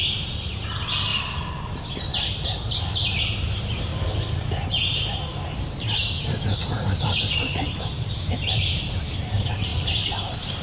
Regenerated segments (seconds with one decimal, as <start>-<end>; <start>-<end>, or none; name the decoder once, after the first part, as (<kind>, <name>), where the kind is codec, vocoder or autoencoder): 0.0-1.1 (vocoder, BigVGAN v2); 2.8-3.9; 4.8-10.6

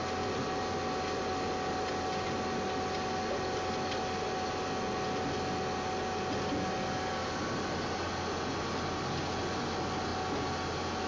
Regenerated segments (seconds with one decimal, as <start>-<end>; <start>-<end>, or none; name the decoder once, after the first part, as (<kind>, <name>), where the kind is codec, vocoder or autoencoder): none

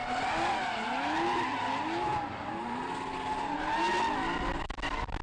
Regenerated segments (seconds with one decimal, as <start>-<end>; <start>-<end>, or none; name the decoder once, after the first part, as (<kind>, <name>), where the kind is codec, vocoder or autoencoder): none

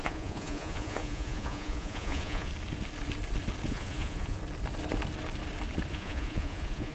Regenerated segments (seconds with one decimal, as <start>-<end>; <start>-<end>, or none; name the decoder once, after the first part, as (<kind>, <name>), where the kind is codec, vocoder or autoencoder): 0.0-2.5 (vocoder, Vocos); 3.7-4.4; 5.9-6.9